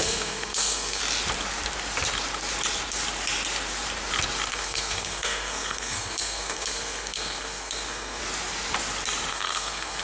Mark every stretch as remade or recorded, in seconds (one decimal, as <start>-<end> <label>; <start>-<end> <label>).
0.0-1.0 remade; 1.0-4.5 recorded; 4.5-8.2 remade; 8.2-9.3 recorded; 9.3-10.0 remade